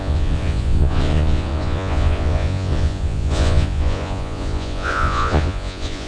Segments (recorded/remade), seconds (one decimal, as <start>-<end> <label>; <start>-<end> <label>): 0.0-6.1 remade